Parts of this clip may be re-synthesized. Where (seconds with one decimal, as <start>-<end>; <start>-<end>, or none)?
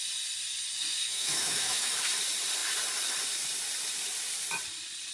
0.9-1.9